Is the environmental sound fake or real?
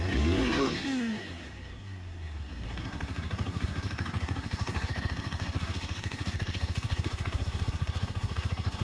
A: fake